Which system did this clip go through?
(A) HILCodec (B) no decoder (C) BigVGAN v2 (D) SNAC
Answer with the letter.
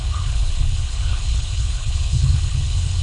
A